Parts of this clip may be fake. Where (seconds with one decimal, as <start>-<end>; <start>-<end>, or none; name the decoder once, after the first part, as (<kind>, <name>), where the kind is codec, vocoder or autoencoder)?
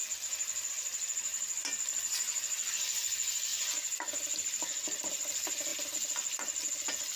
none